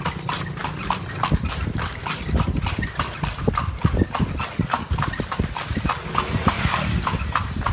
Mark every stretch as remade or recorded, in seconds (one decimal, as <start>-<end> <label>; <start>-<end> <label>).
0.0-7.7 recorded